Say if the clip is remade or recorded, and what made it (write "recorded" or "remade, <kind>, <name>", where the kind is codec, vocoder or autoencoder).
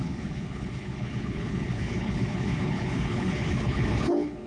remade, codec, HILCodec